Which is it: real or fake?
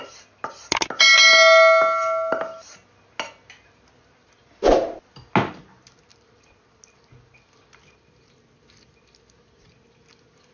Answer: real